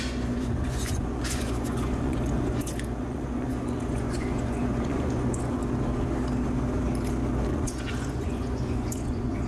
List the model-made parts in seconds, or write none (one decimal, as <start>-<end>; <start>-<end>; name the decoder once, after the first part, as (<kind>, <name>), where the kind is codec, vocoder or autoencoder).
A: 0.0-5.6 (vocoder, Vocos); 7.5-9.5